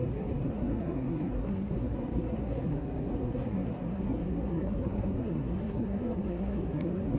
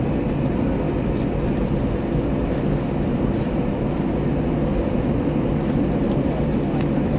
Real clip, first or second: second